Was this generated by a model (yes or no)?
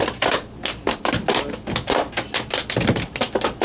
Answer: no